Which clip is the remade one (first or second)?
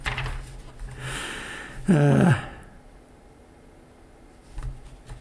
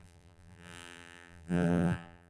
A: second